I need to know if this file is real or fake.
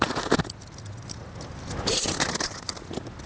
real